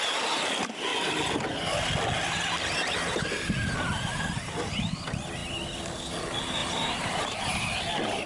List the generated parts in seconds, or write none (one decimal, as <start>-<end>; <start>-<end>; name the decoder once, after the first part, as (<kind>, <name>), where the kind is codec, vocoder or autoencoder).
6.6-7.8 (vocoder, BigVGAN v2)